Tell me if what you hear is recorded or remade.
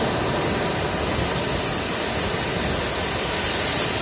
recorded